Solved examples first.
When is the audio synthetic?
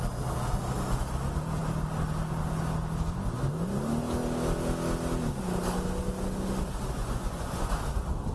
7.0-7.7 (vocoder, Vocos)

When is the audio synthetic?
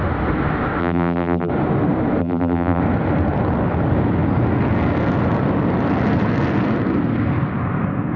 0.8-1.5 (vocoder, BigVGAN v2); 2.2-2.8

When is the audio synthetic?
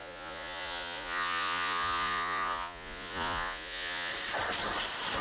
0.0-4.1 (vocoder, Vocos)